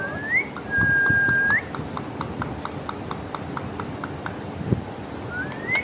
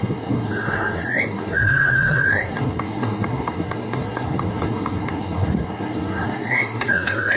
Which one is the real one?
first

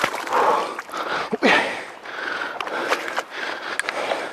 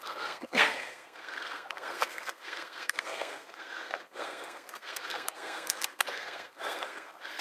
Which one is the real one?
first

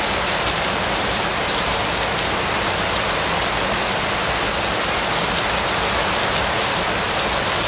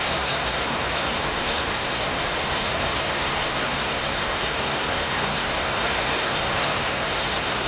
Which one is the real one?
first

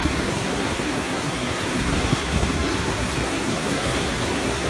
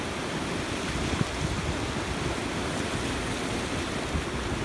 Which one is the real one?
second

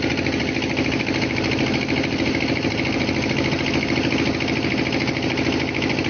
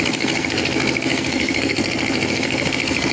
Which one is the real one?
first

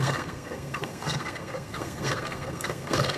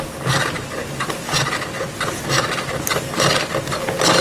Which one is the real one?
second